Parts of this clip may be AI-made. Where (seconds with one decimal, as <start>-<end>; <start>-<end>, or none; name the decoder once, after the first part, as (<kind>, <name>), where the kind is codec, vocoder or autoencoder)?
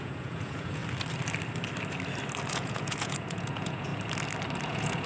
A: 0.0-0.8 (vocoder, Vocos); 2.5-3.9; 4.6-5.1